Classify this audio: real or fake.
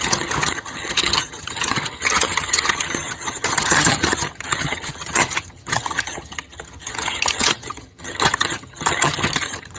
fake